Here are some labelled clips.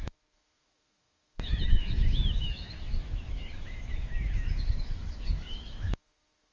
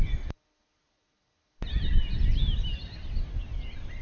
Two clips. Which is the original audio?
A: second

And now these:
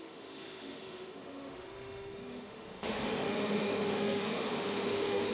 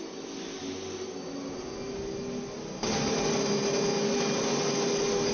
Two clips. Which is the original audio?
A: second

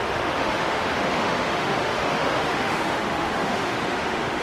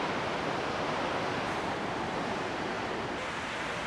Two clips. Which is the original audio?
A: second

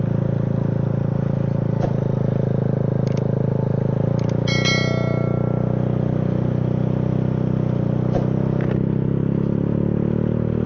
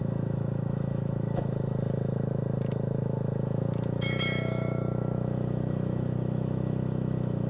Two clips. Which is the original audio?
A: first